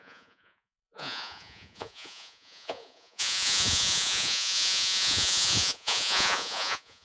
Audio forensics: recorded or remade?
remade